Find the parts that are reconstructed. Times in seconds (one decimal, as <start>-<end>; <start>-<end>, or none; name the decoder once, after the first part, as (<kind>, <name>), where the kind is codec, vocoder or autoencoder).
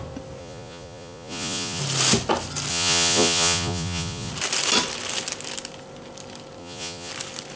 0.4-1.8 (vocoder, Vocos); 2.7-4.3; 6.6-7.1